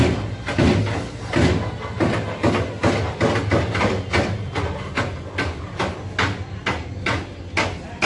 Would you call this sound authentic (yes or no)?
yes